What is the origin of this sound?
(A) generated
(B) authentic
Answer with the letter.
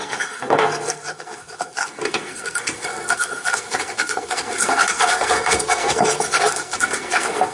A